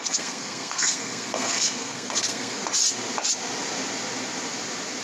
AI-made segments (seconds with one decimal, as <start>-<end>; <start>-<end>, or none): 0.0-2.6